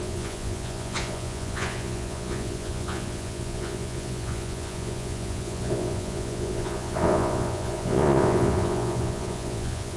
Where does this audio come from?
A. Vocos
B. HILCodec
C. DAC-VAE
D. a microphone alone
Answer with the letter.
A